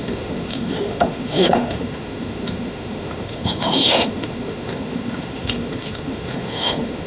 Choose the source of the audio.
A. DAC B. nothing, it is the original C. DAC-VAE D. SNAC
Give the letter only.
C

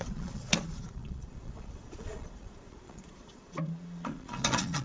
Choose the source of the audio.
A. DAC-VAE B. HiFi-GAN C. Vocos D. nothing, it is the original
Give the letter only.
C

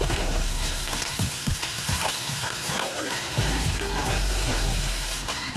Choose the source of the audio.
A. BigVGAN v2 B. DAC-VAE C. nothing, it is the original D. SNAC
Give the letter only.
D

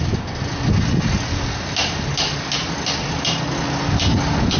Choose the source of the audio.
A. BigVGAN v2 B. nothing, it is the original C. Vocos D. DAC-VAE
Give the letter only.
B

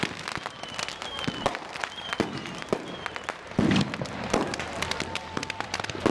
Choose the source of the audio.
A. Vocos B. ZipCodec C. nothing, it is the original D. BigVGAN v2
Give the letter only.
C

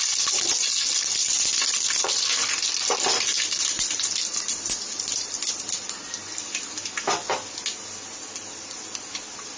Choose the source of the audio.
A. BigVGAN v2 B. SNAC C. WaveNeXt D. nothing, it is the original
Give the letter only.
D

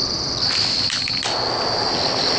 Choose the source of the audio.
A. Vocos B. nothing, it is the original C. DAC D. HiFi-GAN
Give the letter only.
B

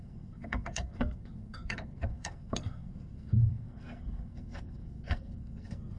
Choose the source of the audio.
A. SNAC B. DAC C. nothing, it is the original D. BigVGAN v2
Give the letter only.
A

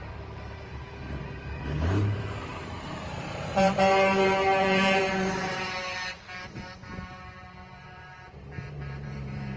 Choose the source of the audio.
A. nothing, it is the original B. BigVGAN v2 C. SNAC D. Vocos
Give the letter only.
B